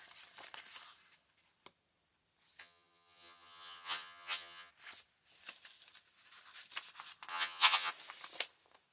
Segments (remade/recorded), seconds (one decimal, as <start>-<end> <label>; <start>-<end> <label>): 0.0-2.6 recorded; 2.6-4.7 remade; 4.7-7.3 recorded; 7.3-7.9 remade; 7.9-8.9 recorded